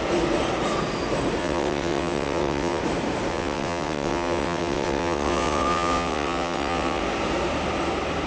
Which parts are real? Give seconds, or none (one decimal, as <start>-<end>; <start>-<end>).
0.0-1.4; 2.8-3.3; 7.0-8.3